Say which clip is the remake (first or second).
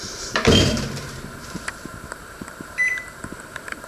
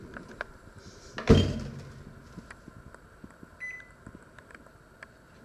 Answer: first